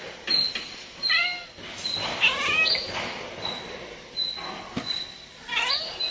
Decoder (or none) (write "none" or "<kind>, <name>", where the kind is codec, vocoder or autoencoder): none